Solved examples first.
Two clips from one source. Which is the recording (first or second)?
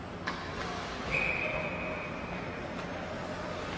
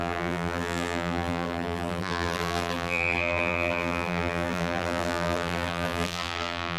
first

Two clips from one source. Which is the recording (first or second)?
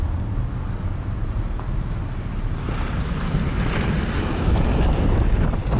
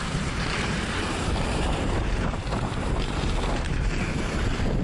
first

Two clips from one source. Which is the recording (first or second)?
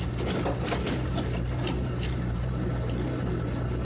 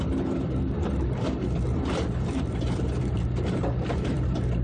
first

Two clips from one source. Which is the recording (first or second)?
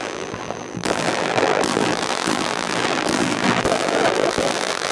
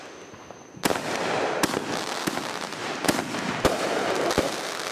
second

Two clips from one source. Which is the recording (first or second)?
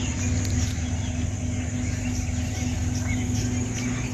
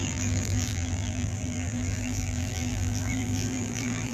first